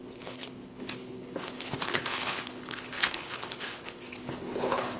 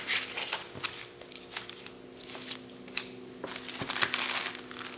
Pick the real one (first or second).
second